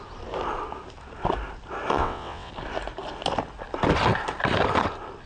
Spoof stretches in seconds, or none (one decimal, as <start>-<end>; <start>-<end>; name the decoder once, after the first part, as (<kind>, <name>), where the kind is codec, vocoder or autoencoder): 1.9-2.5 (vocoder, WaveNeXt)

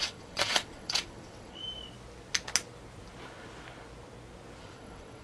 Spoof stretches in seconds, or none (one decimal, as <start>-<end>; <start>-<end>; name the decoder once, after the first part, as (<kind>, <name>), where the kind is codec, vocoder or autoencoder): 0.0-1.6 (vocoder, WaveNeXt); 4.6-5.2

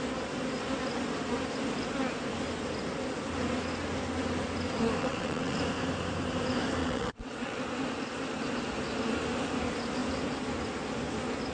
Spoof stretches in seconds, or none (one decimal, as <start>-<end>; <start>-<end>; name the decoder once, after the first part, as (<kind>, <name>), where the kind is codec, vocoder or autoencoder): 5.0-5.6 (vocoder, WaveNeXt); 6.8-7.6

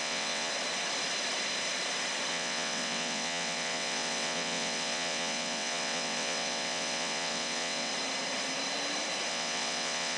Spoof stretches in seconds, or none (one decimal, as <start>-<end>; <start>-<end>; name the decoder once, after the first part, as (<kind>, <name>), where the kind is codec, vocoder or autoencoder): 0.0-0.5 (vocoder, WaveNeXt); 2.3-7.9; 9.3-10.2

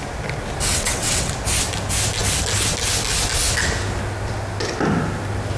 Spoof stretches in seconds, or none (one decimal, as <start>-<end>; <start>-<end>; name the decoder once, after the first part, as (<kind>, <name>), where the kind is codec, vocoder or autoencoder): 0.7-1.3 (vocoder, WaveNeXt)

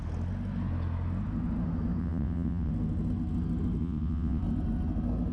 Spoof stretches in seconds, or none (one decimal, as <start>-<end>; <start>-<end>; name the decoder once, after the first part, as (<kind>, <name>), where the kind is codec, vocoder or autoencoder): 2.0-2.7 (vocoder, WaveNeXt); 3.8-4.4